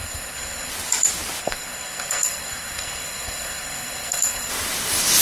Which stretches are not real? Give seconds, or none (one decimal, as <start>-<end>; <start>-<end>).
0.0-0.7; 1.4-4.5